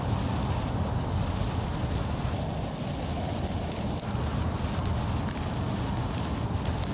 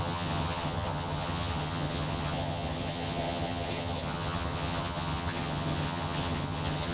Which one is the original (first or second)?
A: first